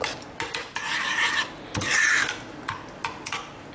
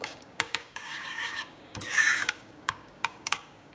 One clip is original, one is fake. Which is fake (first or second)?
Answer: second